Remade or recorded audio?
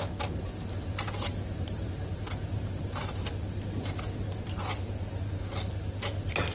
recorded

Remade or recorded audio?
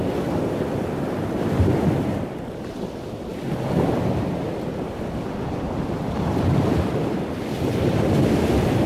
recorded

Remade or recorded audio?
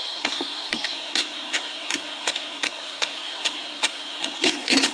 remade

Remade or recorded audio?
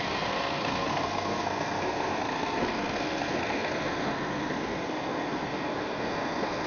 remade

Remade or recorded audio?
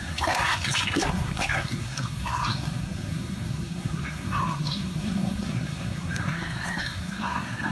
remade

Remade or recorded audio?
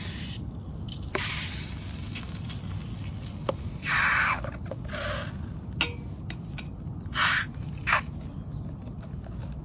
recorded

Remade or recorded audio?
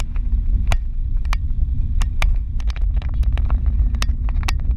recorded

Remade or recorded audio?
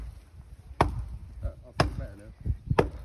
recorded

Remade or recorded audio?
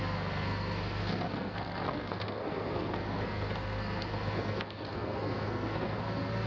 remade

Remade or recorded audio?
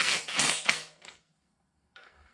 remade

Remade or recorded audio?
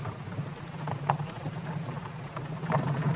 recorded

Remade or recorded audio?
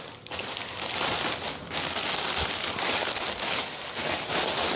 recorded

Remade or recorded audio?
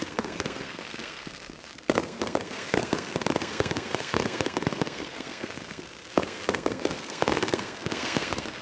remade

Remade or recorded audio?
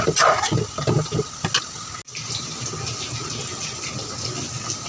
recorded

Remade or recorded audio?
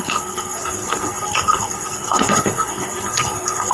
remade